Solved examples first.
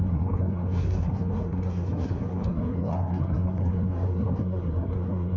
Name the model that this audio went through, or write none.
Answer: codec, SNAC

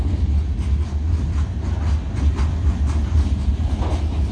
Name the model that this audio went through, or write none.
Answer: none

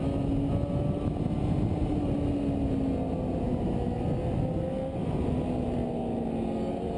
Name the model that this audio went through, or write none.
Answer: none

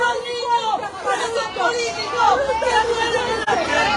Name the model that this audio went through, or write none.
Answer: none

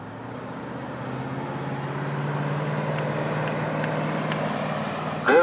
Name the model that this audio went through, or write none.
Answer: none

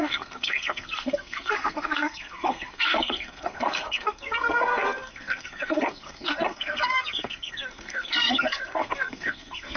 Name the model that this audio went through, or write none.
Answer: codec, SNAC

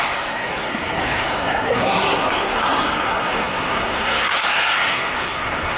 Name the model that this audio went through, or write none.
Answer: codec, SNAC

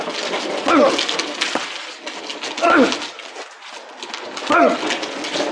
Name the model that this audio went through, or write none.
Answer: none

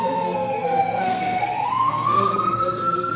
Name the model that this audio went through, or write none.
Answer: codec, SNAC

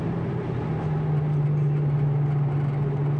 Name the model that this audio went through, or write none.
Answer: none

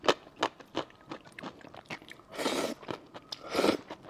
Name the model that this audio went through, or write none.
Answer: none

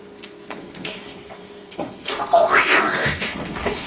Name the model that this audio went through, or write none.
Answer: codec, SNAC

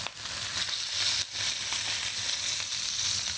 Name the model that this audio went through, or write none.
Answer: none